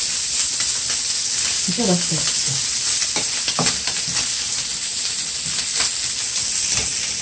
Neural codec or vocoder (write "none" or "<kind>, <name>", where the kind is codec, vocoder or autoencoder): none